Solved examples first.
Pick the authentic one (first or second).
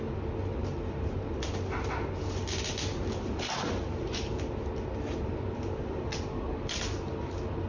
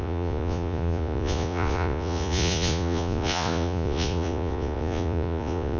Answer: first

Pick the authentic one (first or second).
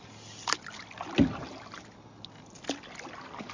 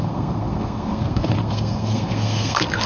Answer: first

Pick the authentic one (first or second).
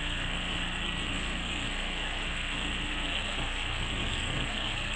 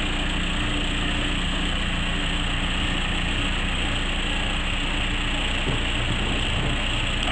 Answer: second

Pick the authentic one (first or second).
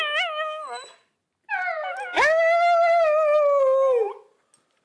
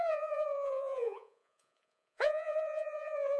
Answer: first